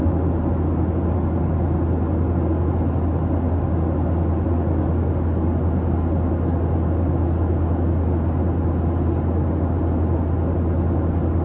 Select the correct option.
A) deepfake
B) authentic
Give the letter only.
B